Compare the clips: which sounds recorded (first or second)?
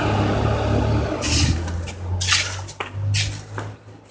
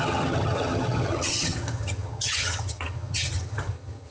first